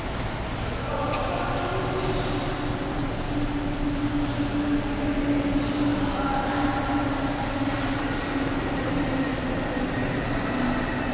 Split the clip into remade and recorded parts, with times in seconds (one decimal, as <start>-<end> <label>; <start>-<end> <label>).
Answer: 0.0-11.1 recorded